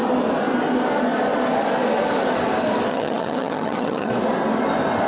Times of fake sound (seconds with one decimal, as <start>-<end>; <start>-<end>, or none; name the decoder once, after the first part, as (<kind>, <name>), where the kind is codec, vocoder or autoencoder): 2.9-4.1 (vocoder, HiFi-GAN)